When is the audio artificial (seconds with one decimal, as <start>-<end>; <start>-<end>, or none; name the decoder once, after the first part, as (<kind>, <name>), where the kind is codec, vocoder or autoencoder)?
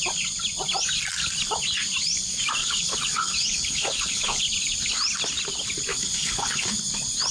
2.6-4.4 (codec, HILCodec); 5.9-6.6